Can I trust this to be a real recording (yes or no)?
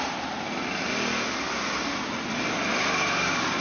yes